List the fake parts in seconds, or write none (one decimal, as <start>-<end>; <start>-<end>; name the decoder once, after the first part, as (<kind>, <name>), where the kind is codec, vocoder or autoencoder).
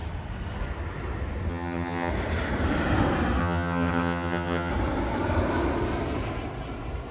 1.5-2.1 (vocoder, HiFi-GAN); 3.4-4.7